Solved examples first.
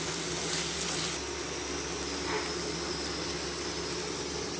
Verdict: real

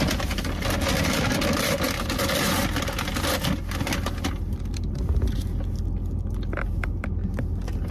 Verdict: real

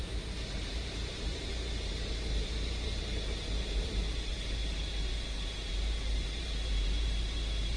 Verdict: fake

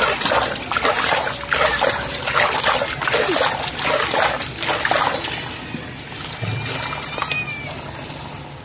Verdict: real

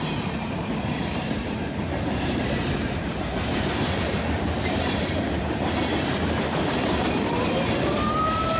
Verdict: fake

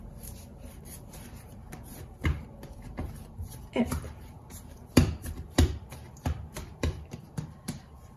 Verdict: fake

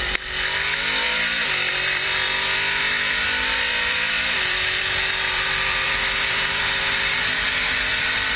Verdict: fake